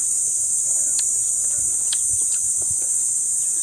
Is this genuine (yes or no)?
yes